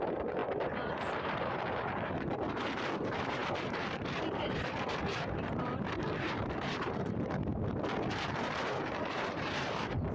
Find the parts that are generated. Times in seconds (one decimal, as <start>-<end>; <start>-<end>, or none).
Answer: 0.0-7.5; 8.1-10.1